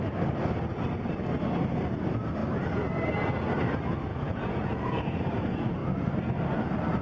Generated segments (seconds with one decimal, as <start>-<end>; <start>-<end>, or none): 4.1-5.2